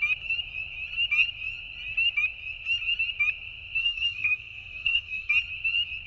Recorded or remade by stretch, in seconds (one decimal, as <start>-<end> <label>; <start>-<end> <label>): 0.0-3.8 recorded; 3.8-5.3 remade; 5.3-6.1 recorded